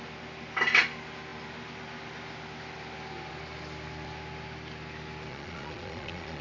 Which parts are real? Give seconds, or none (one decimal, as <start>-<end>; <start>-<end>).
0.0-5.3

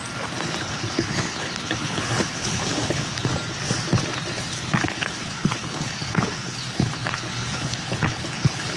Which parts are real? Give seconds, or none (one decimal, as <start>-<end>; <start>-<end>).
0.0-0.6; 3.3-4.3